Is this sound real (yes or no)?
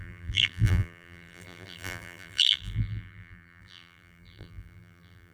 no